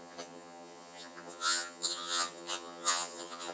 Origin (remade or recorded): remade